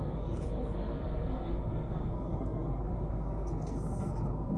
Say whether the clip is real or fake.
fake